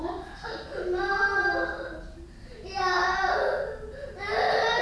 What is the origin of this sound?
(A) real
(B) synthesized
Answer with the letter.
A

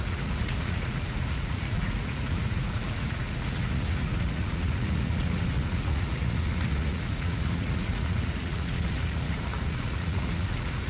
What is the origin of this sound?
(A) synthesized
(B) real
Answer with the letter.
A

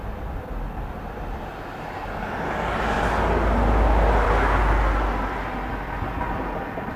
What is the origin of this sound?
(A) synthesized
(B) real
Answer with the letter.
B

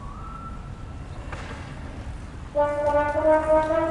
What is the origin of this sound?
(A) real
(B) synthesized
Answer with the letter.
A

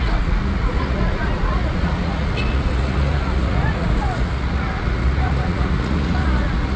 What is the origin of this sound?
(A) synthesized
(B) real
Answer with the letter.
A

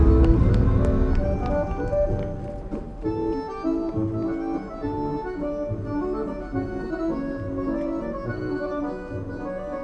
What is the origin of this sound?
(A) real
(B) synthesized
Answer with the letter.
A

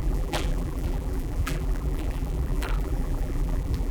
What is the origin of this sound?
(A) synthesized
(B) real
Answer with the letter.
A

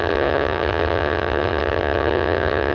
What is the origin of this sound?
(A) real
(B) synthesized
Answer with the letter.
B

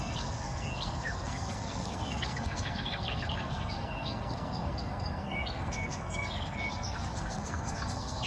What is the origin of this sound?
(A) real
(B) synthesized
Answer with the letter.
B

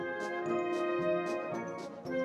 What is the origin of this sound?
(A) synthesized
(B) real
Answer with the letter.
B